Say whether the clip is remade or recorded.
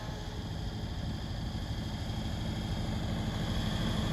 recorded